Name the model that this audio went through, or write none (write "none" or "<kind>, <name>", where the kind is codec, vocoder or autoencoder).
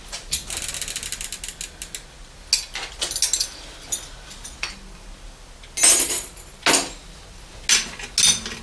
none